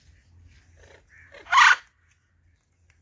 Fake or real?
real